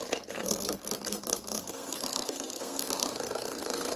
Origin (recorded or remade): remade